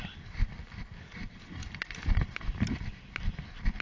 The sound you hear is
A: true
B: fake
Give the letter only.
A